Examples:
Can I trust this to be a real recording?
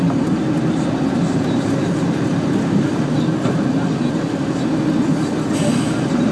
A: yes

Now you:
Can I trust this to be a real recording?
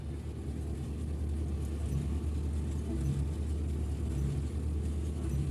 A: yes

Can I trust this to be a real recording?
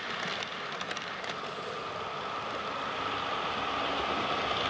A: yes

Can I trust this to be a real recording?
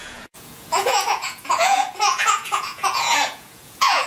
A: no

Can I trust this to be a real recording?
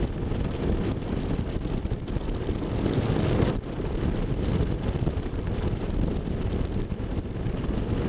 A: yes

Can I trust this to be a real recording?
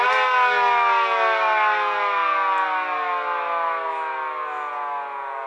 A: yes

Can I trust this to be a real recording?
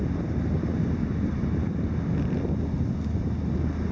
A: yes